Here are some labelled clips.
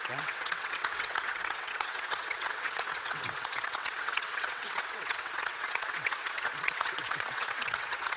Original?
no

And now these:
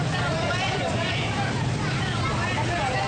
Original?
yes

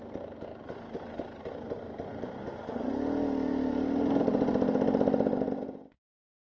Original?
yes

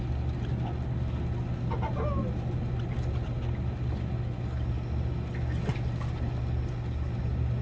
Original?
yes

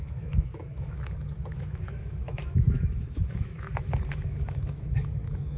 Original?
no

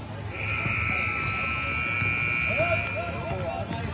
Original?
yes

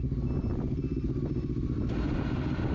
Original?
yes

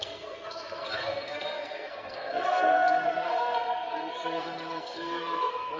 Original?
no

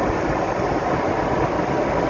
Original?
yes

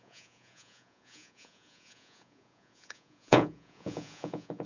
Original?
no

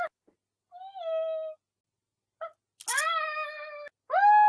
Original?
yes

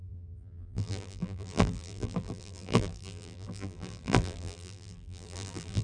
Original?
no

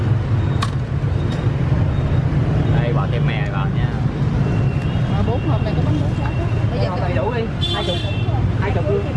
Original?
yes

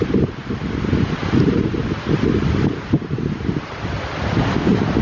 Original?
yes